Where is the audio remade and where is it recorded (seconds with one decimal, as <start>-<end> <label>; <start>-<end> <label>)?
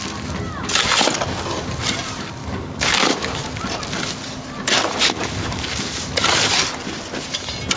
0.0-2.4 recorded; 2.4-3.3 remade; 3.3-5.0 recorded; 5.0-6.0 remade; 6.0-7.8 recorded